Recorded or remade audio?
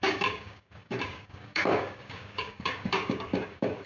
remade